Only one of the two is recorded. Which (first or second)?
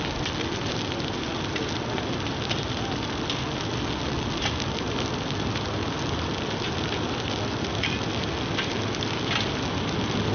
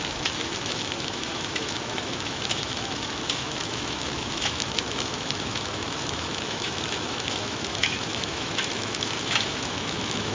first